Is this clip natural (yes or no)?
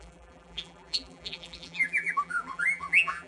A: no